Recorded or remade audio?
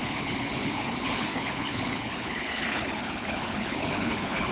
remade